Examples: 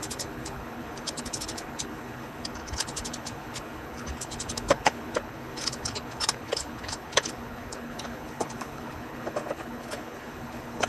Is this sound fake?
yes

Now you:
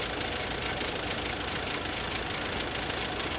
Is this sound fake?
no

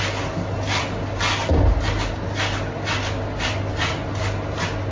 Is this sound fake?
no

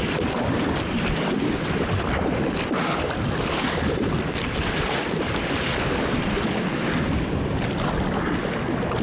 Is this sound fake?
no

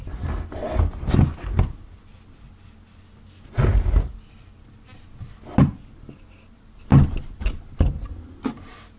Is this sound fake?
no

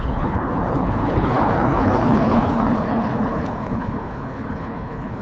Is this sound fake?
yes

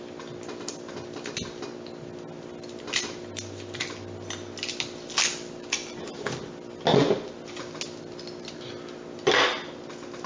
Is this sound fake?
no